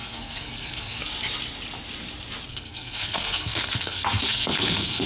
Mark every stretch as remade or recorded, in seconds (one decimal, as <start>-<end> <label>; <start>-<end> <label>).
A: 0.0-1.0 remade; 1.0-2.5 recorded; 2.5-5.1 remade